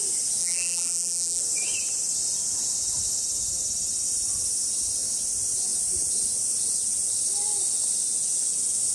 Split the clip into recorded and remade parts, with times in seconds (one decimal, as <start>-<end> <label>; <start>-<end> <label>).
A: 0.0-0.4 recorded; 0.4-1.4 remade; 1.4-8.9 recorded